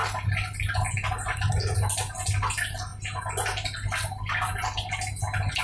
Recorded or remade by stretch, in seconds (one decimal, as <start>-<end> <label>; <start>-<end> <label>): 0.0-5.6 recorded